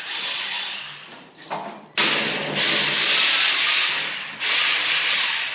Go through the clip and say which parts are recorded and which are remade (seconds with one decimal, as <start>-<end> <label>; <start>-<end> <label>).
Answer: 0.0-5.5 recorded